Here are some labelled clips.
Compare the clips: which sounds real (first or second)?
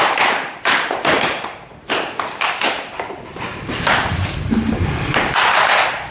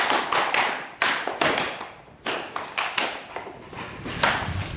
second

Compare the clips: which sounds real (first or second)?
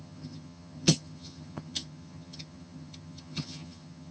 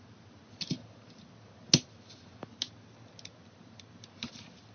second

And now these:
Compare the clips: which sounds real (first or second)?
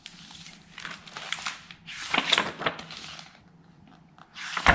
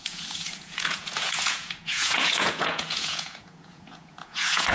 first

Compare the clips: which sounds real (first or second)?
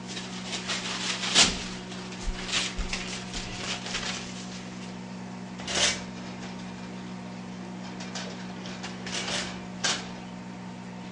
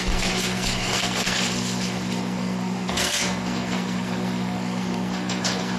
first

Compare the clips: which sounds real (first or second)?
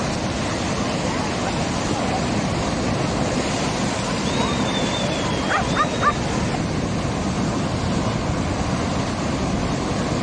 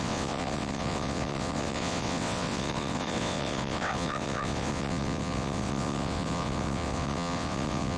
first